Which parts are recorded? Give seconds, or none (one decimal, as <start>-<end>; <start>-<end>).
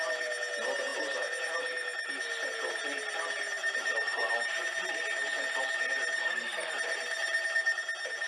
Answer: 0.0-6.2; 6.7-8.3